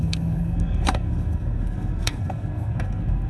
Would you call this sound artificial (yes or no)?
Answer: yes